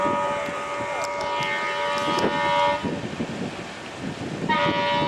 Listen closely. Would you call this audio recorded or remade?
recorded